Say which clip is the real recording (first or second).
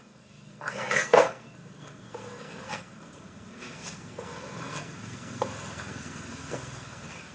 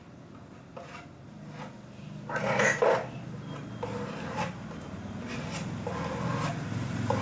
second